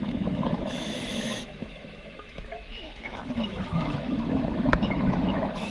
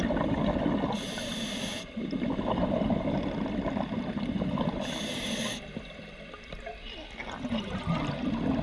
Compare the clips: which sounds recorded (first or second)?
second